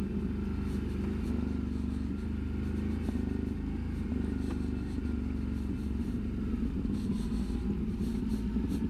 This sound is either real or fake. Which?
real